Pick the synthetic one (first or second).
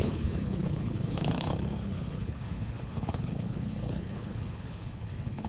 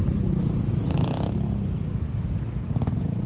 first